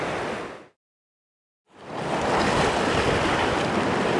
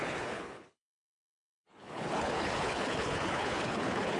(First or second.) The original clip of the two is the first